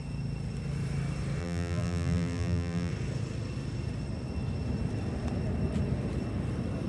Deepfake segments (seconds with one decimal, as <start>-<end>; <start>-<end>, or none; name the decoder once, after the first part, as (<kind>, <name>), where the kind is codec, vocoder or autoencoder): 1.4-2.9 (vocoder, BigVGAN v2)